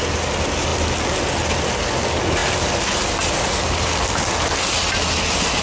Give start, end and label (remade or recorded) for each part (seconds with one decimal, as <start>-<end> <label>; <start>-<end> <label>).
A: 0.0-5.6 recorded